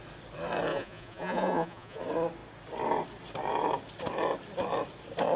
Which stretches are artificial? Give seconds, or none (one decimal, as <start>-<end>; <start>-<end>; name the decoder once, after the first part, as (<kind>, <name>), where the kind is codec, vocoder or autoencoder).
0.7-2.0 (vocoder, Vocos)